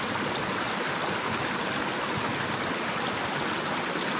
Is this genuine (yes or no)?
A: yes